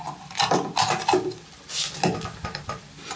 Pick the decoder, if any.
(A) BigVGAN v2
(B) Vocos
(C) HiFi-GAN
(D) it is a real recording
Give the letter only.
D